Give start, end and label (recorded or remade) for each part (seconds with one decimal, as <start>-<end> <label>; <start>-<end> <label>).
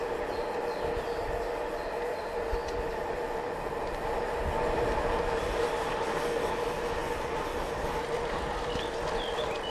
0.0-9.7 recorded